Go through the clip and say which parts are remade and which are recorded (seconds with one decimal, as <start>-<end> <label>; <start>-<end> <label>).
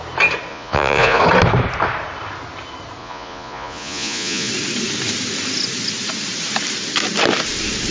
0.0-0.5 recorded; 0.5-1.2 remade; 1.2-3.0 recorded; 3.0-4.5 remade; 4.5-7.9 recorded